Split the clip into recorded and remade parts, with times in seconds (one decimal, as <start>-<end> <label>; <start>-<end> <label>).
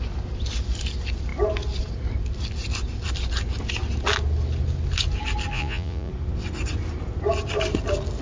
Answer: 0.0-5.5 recorded; 5.5-6.1 remade; 6.1-8.2 recorded